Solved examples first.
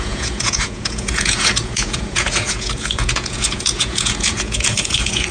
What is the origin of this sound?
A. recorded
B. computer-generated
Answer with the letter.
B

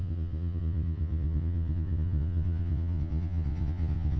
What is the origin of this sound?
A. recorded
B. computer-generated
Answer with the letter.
B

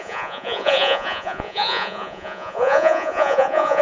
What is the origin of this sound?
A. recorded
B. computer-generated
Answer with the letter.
B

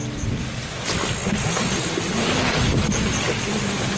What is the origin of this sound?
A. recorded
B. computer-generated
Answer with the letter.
A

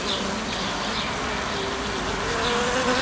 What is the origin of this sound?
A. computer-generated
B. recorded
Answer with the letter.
B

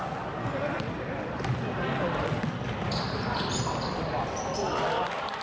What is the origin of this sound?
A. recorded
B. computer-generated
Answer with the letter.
A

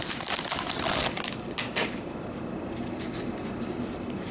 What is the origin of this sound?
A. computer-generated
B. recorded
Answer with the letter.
B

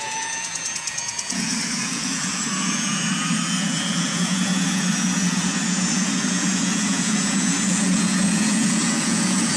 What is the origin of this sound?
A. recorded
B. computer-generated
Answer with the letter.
B